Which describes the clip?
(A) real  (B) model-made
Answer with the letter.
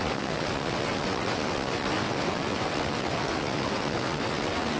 B